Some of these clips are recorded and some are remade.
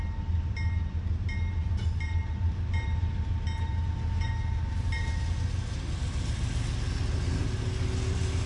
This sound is recorded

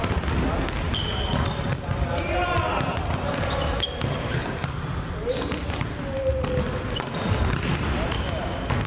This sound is recorded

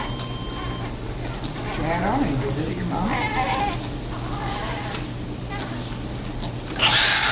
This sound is recorded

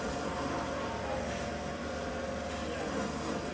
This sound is recorded